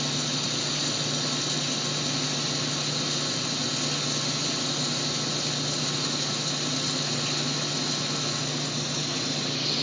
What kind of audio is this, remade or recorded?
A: recorded